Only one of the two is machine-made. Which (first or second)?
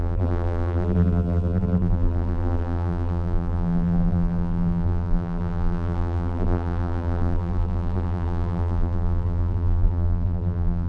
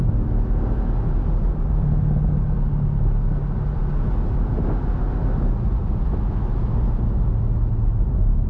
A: first